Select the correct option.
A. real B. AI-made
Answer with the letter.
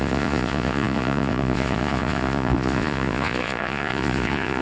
B